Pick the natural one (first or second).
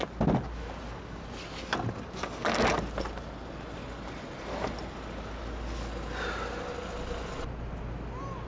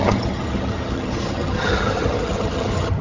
first